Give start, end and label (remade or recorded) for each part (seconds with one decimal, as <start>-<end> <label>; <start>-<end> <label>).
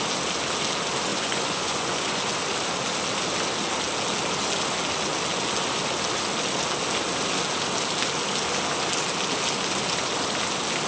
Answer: 0.0-1.1 recorded; 1.1-2.2 remade; 2.2-10.9 recorded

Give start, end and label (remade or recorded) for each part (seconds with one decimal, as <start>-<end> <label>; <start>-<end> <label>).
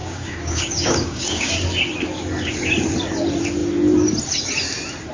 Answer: 0.0-1.5 remade; 1.5-5.1 recorded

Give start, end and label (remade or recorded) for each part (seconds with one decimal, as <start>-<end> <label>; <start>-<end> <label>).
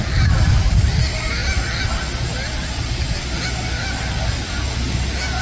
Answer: 0.0-5.4 recorded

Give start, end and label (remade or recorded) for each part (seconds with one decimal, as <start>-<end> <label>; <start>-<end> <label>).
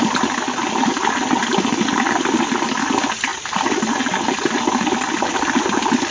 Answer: 0.0-6.1 recorded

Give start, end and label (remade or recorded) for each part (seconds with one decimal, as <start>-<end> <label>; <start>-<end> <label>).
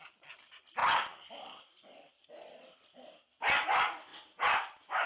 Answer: 0.0-5.1 recorded